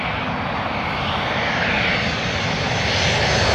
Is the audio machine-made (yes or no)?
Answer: no